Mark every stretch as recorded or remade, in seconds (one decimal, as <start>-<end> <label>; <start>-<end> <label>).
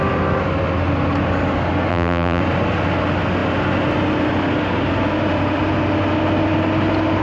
0.0-1.9 recorded; 1.9-2.4 remade; 2.4-7.2 recorded